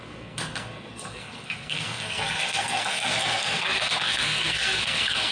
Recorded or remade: remade